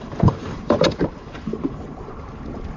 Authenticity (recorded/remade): remade